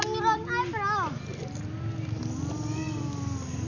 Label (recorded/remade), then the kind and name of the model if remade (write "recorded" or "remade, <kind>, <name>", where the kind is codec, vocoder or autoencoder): recorded